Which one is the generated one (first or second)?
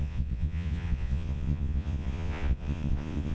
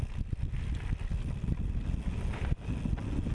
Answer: first